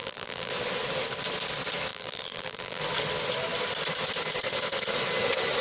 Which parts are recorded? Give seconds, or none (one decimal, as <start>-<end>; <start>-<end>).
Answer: 0.5-1.9; 2.8-5.6